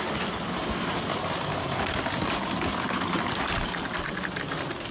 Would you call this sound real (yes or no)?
yes